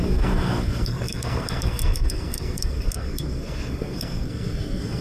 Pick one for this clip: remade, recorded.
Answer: remade